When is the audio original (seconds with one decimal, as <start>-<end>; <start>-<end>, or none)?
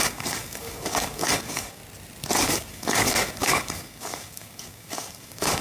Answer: 1.8-2.4